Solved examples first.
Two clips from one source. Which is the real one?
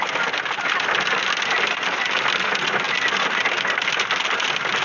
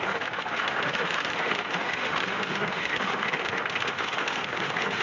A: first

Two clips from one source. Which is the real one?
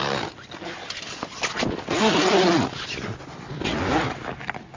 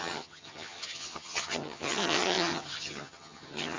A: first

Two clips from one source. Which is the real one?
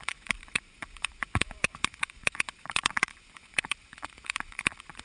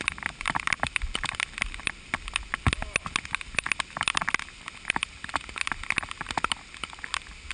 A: second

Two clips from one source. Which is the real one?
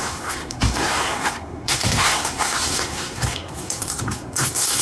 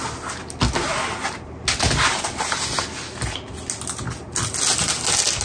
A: second